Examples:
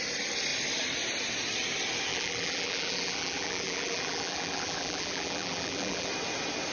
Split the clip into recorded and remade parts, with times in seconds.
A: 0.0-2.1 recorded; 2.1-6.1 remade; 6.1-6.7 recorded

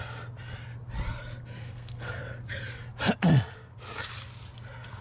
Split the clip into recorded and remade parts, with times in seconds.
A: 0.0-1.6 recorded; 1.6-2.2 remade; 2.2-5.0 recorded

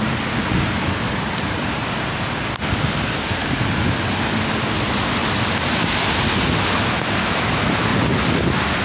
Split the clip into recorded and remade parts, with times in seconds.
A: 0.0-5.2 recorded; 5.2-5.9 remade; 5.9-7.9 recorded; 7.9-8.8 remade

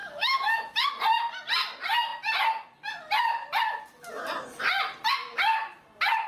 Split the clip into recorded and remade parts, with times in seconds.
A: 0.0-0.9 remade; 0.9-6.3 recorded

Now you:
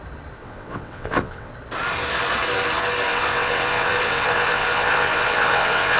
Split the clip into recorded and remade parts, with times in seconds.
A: 0.0-0.4 recorded; 0.4-1.5 remade; 1.5-3.1 recorded; 3.1-6.0 remade